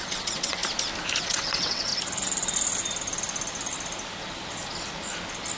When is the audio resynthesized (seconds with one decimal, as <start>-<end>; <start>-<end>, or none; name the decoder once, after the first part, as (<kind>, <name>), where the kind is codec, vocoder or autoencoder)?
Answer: 0.0-0.6 (vocoder, WaveNeXt); 1.2-1.9